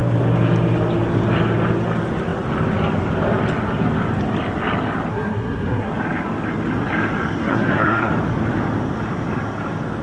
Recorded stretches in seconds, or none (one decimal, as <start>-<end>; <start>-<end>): 0.0-5.1; 5.9-7.4; 8.1-10.0